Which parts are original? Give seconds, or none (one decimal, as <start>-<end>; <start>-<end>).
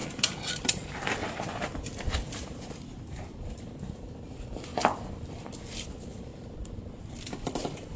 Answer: 0.0-1.3; 4.7-5.8; 6.3-7.0